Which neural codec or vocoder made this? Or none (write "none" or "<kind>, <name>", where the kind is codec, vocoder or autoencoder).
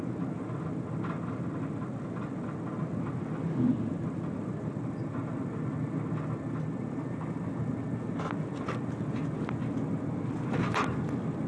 none